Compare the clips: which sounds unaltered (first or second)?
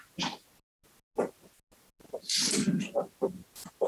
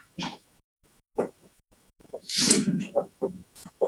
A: first